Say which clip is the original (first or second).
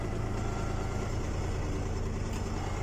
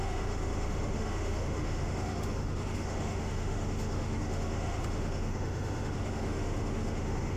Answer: first